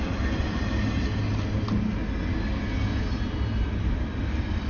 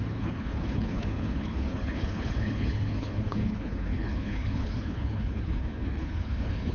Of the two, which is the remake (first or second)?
second